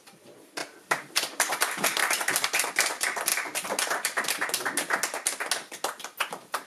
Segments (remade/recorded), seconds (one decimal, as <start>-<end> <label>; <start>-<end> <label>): 0.0-6.7 recorded